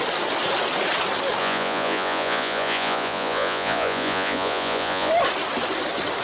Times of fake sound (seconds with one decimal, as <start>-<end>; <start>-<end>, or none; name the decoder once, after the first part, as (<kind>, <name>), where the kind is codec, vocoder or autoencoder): 1.4-5.1 (vocoder, Vocos)